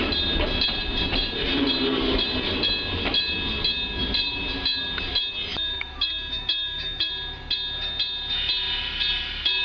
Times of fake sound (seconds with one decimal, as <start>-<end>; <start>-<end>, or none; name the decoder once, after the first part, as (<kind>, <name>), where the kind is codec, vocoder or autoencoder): 5.5-7.1 (autoencoder, DAC-VAE)